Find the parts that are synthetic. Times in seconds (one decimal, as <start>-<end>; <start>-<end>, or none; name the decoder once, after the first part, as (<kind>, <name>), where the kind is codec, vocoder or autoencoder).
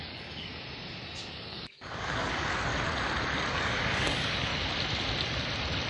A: 0.0-0.5 (codec, DAC); 1.3-2.7; 3.5-4.5